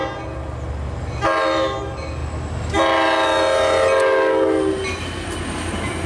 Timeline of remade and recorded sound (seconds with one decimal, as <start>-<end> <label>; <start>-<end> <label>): 0.0-6.1 recorded